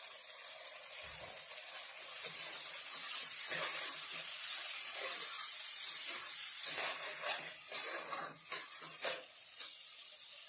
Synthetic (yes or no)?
no